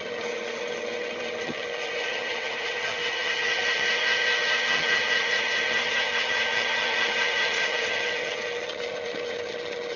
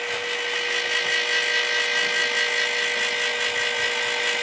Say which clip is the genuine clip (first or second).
second